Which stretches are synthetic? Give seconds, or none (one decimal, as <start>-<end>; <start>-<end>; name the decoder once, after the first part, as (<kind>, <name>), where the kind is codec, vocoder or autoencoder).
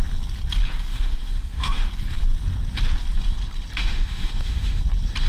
0.9-1.9 (autoencoder, DAC-VAE); 3.8-4.8